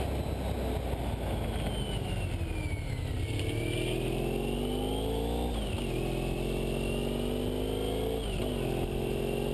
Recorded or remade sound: recorded